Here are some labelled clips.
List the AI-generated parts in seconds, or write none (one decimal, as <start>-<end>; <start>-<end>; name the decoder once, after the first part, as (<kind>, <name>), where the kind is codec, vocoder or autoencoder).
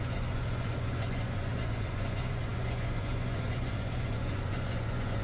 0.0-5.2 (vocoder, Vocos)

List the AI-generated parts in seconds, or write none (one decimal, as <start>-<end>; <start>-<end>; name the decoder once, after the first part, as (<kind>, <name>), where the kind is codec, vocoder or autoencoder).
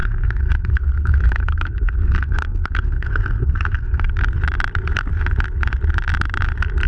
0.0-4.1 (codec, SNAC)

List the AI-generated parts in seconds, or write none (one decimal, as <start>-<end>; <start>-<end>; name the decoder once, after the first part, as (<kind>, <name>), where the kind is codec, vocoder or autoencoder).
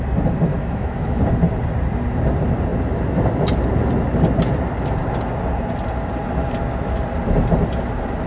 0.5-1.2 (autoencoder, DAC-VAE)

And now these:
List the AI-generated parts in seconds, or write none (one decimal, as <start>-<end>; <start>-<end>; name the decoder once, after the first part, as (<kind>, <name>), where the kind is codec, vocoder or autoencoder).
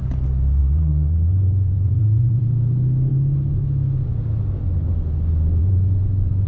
0.6-2.4 (vocoder, Vocos); 5.6-6.5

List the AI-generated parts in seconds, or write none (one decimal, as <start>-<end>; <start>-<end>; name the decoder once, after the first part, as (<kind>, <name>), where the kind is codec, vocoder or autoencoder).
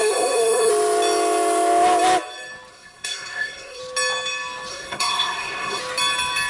0.0-0.7 (codec, SNAC); 2.7-3.8; 4.7-5.8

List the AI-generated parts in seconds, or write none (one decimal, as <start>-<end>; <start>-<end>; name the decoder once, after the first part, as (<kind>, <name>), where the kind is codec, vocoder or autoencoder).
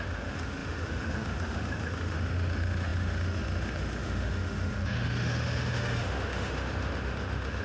0.0-7.6 (autoencoder, DAC-VAE)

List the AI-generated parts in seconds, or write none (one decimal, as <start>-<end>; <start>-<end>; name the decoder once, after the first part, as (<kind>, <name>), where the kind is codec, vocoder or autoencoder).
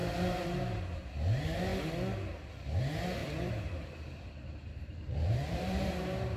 0.0-0.8 (vocoder, BigVGAN v2); 3.2-6.4